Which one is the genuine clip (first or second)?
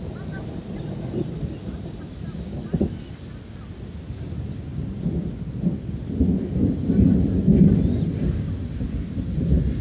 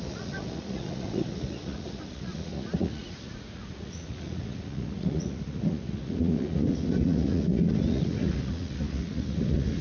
first